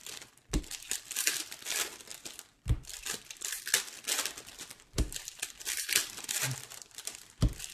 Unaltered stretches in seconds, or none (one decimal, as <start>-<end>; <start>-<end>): 0.0-0.6